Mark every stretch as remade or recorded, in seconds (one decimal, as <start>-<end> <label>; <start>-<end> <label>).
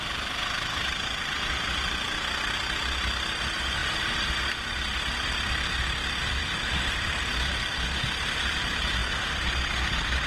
0.0-6.4 recorded; 6.4-7.2 remade; 7.2-10.3 recorded